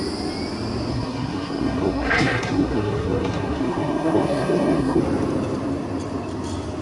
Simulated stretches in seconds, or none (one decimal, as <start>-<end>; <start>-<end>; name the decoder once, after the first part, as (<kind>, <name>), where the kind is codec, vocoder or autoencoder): 0.9-5.0 (codec, SNAC)